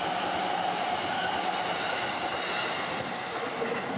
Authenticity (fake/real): real